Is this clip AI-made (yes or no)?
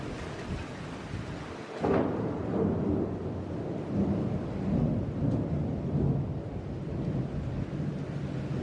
no